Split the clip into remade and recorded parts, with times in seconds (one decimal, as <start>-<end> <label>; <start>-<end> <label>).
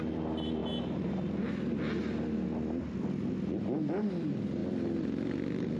0.0-0.6 remade; 0.6-4.1 recorded; 4.1-4.6 remade; 4.6-5.8 recorded